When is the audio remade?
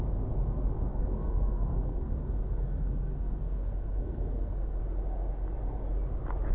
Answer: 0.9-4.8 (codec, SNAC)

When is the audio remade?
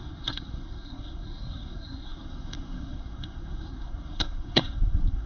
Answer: 0.0-5.3 (codec, SNAC)